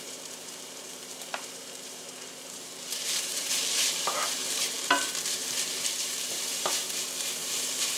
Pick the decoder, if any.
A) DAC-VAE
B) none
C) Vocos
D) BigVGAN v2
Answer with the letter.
D